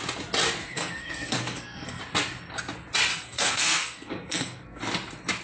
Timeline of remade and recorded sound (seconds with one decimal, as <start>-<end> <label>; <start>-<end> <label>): 0.0-0.6 recorded; 0.6-2.0 remade; 2.0-3.1 recorded; 3.1-4.8 remade; 4.8-5.4 recorded